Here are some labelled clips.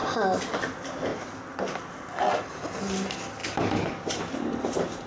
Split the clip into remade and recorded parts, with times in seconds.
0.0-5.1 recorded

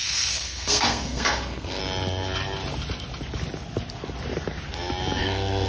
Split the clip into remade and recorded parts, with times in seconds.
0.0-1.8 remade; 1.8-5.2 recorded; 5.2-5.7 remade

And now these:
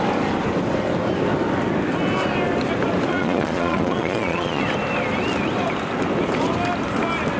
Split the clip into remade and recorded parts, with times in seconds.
0.0-3.1 recorded; 3.1-4.6 remade; 4.6-7.4 recorded

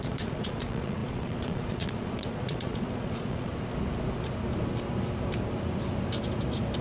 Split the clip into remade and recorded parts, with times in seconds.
0.0-3.5 remade; 3.5-6.8 recorded

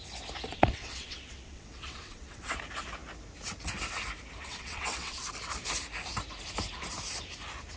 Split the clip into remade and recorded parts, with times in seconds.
0.0-0.5 recorded; 0.5-2.5 remade; 2.5-4.4 recorded; 4.4-5.3 remade; 5.3-7.8 recorded

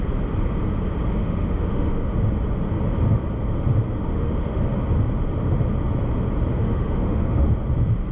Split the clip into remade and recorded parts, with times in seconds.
0.0-1.2 recorded; 1.2-2.1 remade; 2.1-4.0 recorded; 4.0-4.6 remade; 4.6-6.6 recorded; 6.6-7.5 remade; 7.5-8.1 recorded

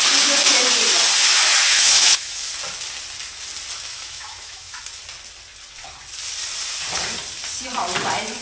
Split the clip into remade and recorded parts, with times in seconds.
0.0-1.2 recorded; 1.2-2.5 remade; 2.5-3.9 recorded; 3.9-4.8 remade; 4.8-8.4 recorded